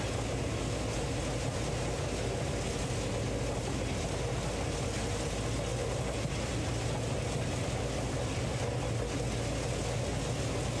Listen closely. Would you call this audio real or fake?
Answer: real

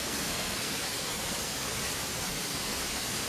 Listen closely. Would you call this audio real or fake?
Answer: fake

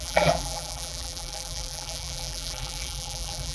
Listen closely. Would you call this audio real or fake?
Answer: fake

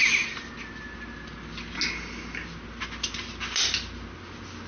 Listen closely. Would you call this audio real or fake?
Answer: real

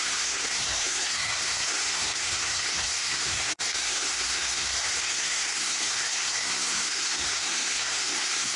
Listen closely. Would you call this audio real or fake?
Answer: fake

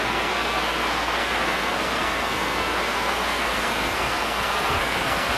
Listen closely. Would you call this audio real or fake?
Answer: fake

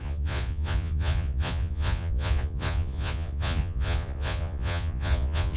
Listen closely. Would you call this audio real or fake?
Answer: fake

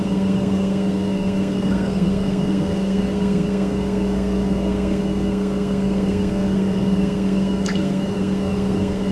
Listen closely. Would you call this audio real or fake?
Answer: fake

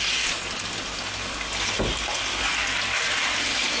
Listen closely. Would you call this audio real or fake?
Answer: real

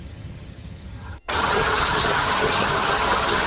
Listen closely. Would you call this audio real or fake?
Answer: fake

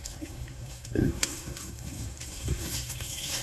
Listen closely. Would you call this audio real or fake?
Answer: fake